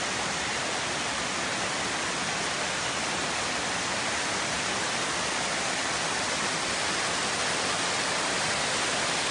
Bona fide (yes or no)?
yes